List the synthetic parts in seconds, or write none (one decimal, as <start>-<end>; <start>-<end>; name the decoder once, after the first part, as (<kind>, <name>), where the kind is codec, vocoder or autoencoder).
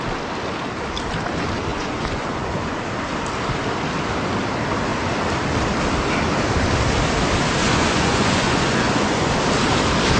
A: 1.7-2.8 (vocoder, Vocos); 7.6-9.3